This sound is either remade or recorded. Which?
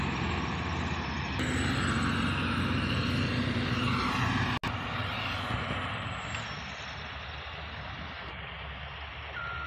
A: recorded